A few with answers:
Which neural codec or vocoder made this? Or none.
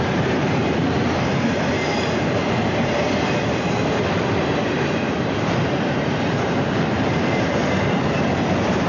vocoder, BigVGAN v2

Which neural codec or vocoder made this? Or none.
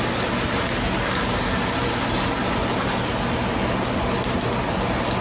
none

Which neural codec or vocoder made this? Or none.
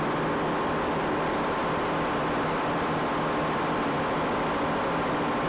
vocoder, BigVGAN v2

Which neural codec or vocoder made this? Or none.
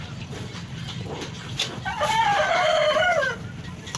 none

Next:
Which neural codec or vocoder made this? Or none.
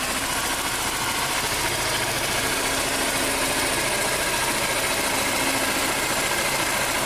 none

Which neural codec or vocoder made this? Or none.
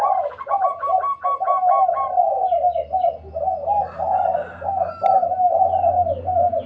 none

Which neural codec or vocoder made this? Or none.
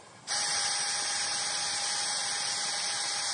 vocoder, BigVGAN v2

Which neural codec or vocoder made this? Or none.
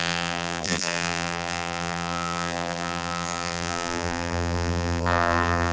vocoder, BigVGAN v2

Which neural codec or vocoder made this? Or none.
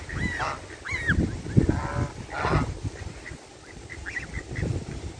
none